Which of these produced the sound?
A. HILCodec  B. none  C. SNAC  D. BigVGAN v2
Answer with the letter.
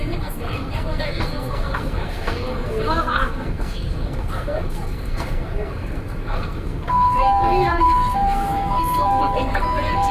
C